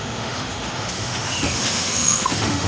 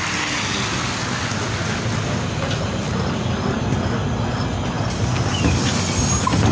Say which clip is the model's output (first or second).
first